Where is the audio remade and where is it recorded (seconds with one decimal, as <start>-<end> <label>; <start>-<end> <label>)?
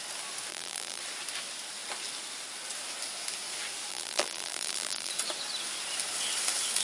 0.0-0.5 recorded; 0.5-1.0 remade; 1.0-3.9 recorded; 3.9-5.1 remade; 5.1-6.8 recorded